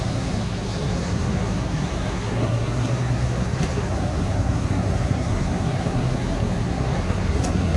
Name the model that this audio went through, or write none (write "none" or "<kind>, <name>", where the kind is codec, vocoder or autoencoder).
codec, SNAC